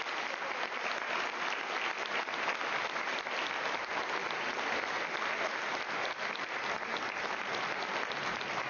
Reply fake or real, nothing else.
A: real